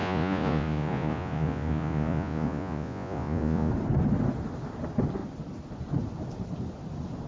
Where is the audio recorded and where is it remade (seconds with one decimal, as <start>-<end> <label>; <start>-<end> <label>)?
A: 0.0-3.7 remade; 3.7-7.3 recorded